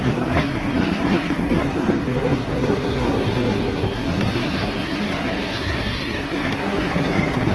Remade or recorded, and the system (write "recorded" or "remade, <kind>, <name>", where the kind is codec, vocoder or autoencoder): remade, codec, SNAC